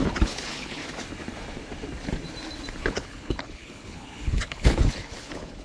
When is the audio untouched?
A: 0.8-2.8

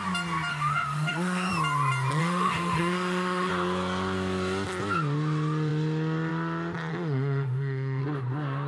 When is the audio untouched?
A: 0.0-0.5; 1.5-2.2; 3.5-6.9; 8.0-8.7

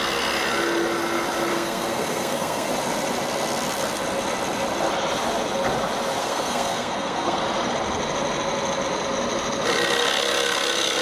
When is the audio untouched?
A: 0.0-1.5; 2.7-6.2; 7.4-11.0

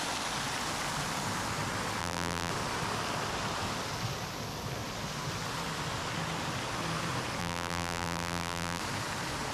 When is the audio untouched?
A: 0.0-2.0; 2.5-7.4; 8.8-9.5

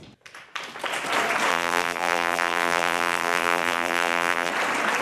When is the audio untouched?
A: 0.0-1.5; 4.5-5.0